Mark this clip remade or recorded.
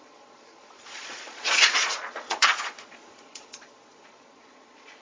remade